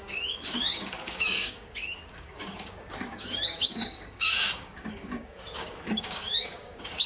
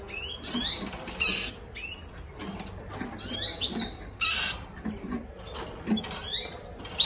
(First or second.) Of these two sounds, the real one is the second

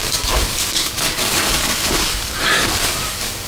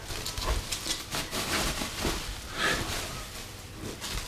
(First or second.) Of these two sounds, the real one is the second